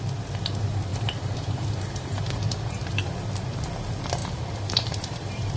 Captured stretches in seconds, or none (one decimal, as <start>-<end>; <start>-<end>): 0.0-0.9; 3.1-4.2